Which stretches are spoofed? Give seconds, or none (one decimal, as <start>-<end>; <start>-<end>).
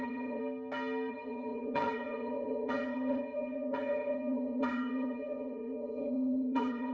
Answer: 0.0-0.4; 1.1-6.9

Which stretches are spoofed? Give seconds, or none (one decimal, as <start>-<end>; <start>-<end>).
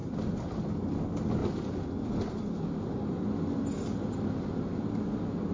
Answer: 1.4-3.3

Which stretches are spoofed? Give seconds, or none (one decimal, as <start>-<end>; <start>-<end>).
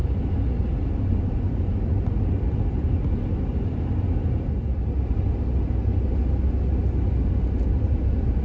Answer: none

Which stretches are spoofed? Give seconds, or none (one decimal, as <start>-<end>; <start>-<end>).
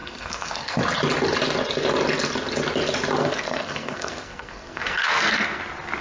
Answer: 0.0-0.8; 3.2-5.6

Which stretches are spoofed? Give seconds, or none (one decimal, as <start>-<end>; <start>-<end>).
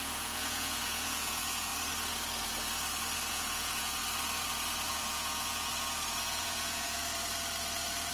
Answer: 0.0-1.7; 3.3-4.0; 4.9-5.7; 6.2-7.0